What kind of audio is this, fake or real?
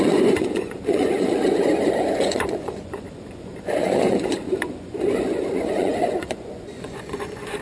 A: fake